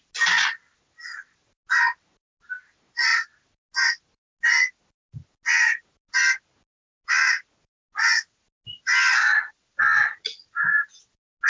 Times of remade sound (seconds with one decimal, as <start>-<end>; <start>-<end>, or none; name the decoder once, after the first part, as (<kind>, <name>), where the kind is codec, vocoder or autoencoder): none